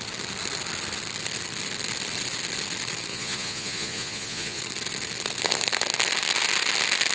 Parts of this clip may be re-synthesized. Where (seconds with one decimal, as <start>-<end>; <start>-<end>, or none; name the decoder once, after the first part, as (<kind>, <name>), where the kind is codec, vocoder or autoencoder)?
3.1-4.6 (vocoder, Vocos)